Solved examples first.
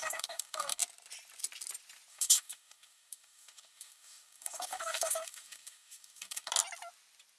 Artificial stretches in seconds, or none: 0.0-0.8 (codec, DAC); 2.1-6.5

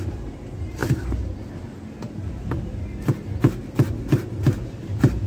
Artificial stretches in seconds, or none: none

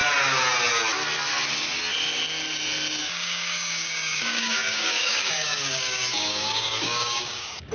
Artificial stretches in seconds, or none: 3.0-7.7 (codec, DAC)

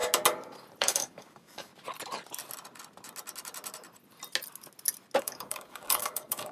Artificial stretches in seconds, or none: 0.8-1.7 (codec, DAC); 5.2-6.5

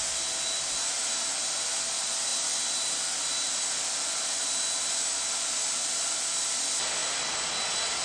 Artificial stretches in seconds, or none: none

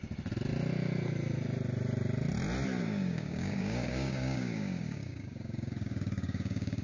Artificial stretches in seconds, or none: 2.8-6.8 (codec, DAC)

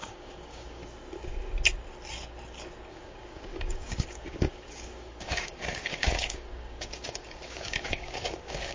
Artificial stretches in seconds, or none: 0.0-0.8 (codec, DAC); 2.9-8.7